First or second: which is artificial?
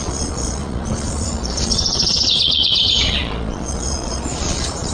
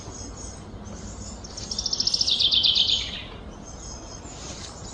first